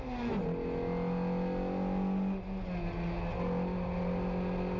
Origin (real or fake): real